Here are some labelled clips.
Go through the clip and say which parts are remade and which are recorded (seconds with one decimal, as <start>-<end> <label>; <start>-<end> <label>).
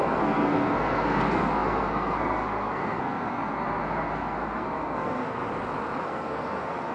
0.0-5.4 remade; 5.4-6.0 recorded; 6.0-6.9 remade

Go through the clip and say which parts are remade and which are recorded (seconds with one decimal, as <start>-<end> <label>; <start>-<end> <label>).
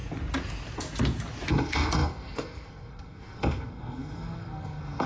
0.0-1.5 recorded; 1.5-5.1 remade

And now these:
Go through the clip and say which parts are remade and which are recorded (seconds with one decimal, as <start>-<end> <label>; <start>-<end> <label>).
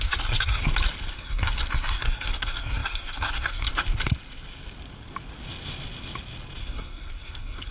0.0-0.6 remade; 0.6-1.1 recorded; 1.1-3.7 remade; 3.7-6.6 recorded; 6.6-7.7 remade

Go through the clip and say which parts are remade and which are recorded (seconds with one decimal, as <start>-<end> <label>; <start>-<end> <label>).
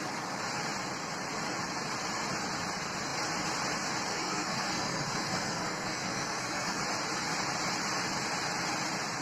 0.0-4.1 recorded; 4.1-6.8 remade; 6.8-9.2 recorded